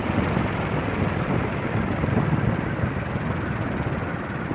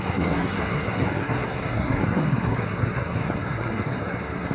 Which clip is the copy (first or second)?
second